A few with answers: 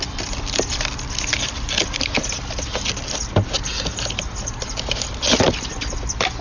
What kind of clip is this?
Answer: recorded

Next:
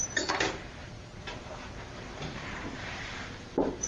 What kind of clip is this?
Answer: remade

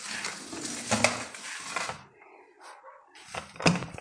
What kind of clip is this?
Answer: recorded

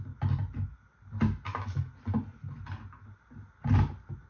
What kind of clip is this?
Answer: recorded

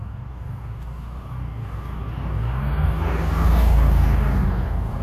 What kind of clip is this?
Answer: remade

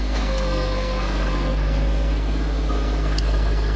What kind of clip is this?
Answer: remade